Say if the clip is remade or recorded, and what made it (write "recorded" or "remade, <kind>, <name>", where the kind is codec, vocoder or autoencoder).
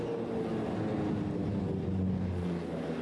recorded